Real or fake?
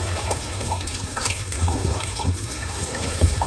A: fake